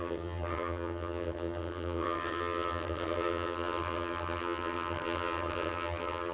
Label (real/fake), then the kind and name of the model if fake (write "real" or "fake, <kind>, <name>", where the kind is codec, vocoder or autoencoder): fake, vocoder, HiFi-GAN